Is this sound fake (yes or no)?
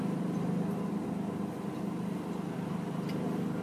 no